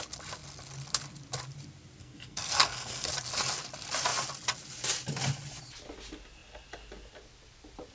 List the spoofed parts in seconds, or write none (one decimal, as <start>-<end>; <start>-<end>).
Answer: 2.0-3.1